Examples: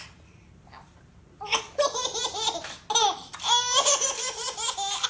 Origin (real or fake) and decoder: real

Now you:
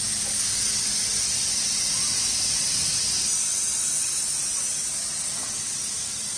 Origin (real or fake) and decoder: real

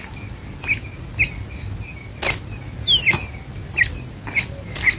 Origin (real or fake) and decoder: real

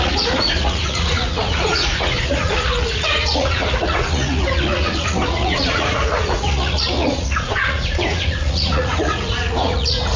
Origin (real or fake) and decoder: fake, vocoder, Vocos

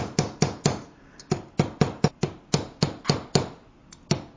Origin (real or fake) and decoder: real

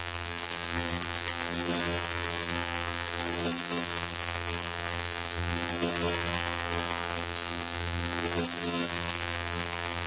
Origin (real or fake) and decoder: fake, vocoder, BigVGAN v2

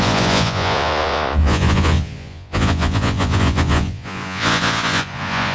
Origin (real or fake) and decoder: fake, vocoder, Vocos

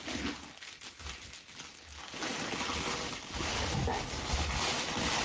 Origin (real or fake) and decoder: real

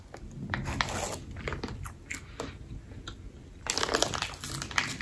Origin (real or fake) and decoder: real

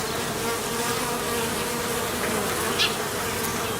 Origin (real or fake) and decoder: real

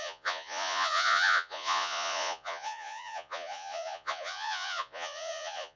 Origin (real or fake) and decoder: fake, vocoder, Vocos